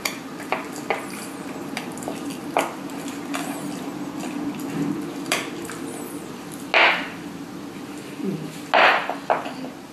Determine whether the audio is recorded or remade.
recorded